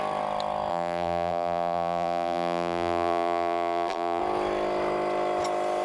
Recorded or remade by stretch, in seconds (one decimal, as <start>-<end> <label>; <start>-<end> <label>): 0.0-0.7 recorded; 0.7-4.2 remade; 4.2-5.8 recorded